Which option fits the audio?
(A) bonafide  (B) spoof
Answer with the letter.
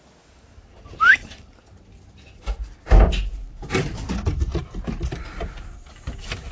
A